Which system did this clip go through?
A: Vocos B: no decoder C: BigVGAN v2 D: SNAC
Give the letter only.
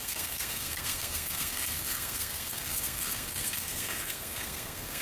D